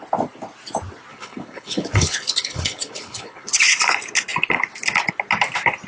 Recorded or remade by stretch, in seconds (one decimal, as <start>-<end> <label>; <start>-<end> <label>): 0.0-1.1 recorded; 1.1-3.5 remade; 3.5-5.9 recorded